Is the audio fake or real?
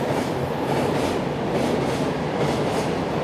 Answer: real